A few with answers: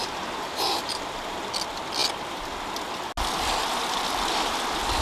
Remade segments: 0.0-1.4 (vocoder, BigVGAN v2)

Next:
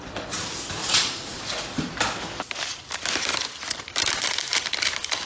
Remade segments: 0.8-1.4 (vocoder, Vocos)